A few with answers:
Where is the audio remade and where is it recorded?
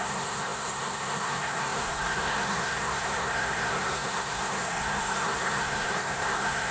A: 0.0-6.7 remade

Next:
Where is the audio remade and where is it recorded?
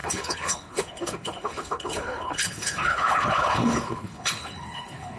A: 0.0-5.2 remade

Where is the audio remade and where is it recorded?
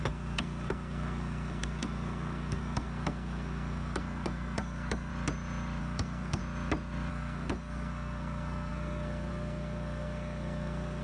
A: 0.0-5.1 remade; 5.1-5.8 recorded; 5.8-6.4 remade; 6.4-7.1 recorded; 7.1-11.0 remade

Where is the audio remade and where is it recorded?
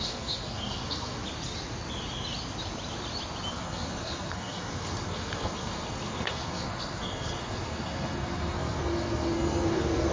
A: 0.0-1.2 remade; 1.2-3.5 recorded; 3.5-10.1 remade